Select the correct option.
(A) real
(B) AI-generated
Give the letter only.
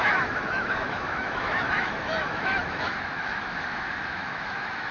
B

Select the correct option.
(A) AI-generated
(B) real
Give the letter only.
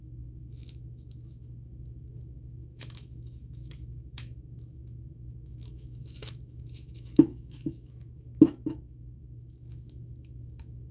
A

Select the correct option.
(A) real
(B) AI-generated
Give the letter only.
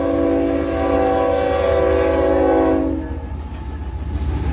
A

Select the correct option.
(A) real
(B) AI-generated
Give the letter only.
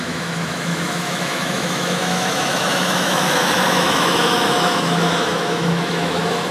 B